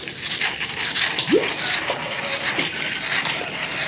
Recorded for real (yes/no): yes